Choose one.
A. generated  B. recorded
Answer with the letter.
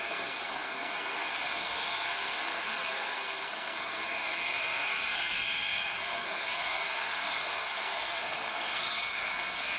A